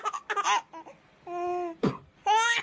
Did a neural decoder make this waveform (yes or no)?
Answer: no